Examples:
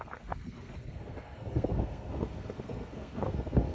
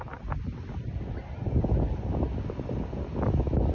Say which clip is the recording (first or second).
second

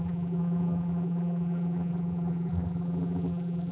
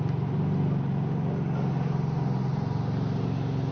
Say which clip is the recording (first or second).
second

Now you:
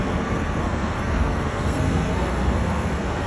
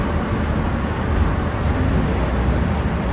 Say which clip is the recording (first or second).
second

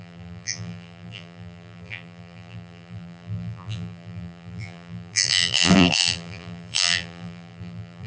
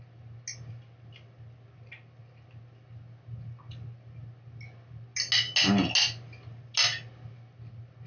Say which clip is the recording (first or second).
second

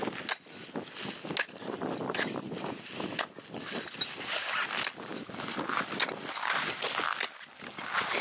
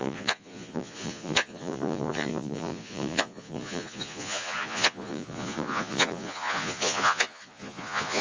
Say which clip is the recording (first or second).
first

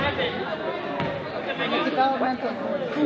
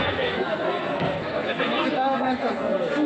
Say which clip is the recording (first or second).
first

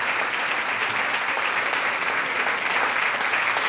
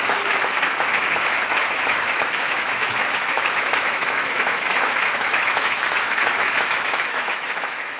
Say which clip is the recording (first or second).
first